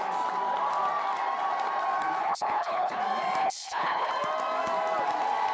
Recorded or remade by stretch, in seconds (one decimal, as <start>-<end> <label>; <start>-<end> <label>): 0.0-2.2 recorded; 2.2-3.0 remade; 3.0-3.4 recorded; 3.4-4.1 remade; 4.1-5.5 recorded

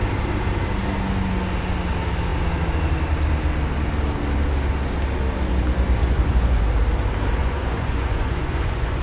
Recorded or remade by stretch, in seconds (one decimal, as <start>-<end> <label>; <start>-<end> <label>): 0.0-6.0 recorded; 6.0-6.6 remade; 6.6-7.4 recorded; 7.4-9.0 remade

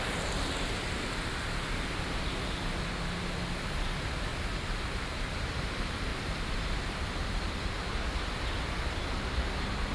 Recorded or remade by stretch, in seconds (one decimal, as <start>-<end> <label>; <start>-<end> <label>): 0.0-4.3 recorded; 4.3-5.2 remade; 5.2-6.1 recorded; 6.1-7.7 remade; 7.7-9.9 recorded

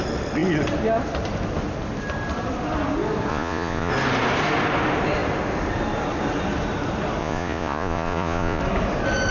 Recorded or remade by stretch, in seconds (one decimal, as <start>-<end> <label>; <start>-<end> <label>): 0.0-3.3 recorded; 3.3-3.9 remade; 3.9-7.2 recorded; 7.2-8.6 remade; 8.6-9.3 recorded